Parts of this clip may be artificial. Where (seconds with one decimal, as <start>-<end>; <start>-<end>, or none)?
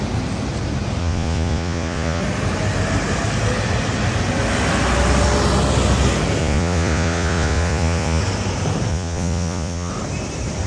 1.0-2.2; 6.4-8.2; 8.9-9.9